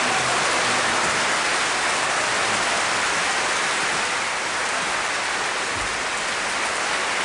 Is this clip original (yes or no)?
yes